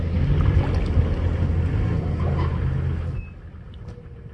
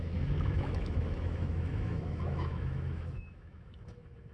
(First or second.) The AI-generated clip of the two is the second